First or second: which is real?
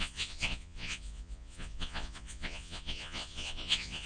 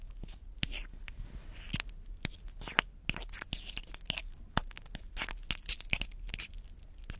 second